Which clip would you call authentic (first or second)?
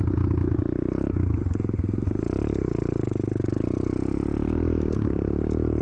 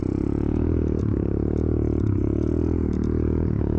first